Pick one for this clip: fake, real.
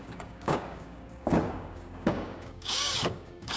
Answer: fake